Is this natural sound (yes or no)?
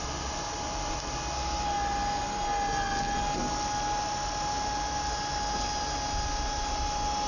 yes